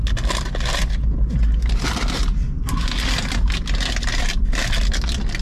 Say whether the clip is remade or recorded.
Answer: recorded